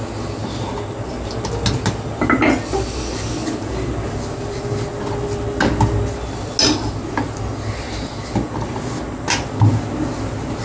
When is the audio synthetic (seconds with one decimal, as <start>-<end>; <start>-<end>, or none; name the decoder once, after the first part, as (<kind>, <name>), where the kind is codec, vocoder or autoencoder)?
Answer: none